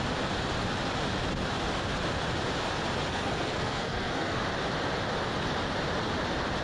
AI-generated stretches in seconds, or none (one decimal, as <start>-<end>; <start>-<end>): 3.1-4.4